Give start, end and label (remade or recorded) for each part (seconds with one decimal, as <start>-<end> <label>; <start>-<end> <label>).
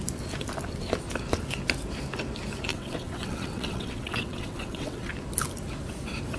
0.0-2.7 recorded; 2.7-5.1 remade; 5.1-6.4 recorded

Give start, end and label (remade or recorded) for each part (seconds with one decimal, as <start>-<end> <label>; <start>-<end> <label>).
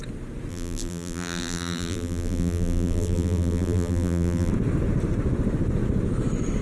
0.0-0.5 recorded; 0.5-4.5 remade; 4.5-6.6 recorded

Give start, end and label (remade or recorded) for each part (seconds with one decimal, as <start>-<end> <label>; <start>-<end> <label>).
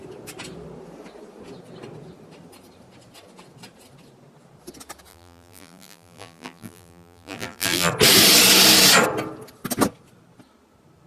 0.0-5.1 recorded; 5.1-7.9 remade; 7.9-11.1 recorded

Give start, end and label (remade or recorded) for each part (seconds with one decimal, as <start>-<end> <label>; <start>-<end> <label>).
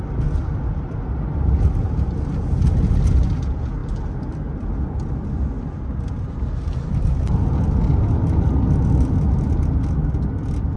0.0-10.8 recorded